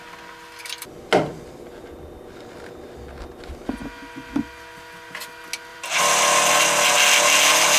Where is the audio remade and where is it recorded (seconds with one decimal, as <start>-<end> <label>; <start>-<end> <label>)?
0.0-5.7 recorded; 5.7-6.5 remade; 6.5-7.8 recorded